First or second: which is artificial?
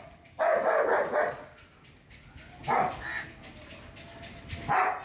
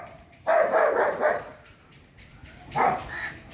second